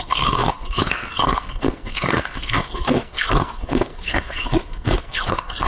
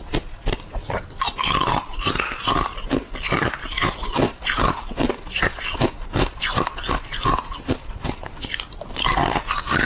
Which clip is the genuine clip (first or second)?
second